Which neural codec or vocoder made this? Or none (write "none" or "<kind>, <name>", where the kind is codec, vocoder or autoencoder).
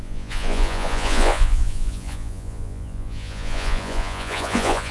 vocoder, Vocos